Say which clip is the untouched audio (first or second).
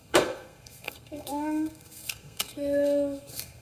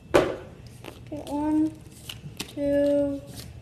second